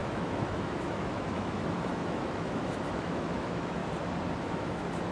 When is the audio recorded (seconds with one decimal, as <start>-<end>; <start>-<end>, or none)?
3.8-4.4